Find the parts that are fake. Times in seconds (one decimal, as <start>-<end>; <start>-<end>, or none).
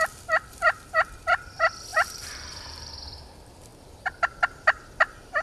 1.9-2.9; 3.7-4.2